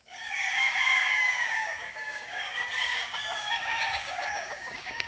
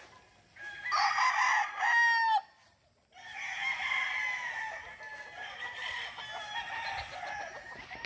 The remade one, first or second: first